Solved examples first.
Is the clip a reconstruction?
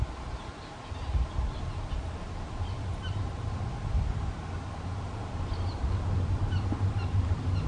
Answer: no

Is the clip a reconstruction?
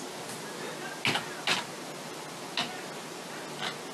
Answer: no